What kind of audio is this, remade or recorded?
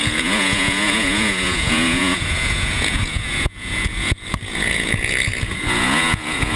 remade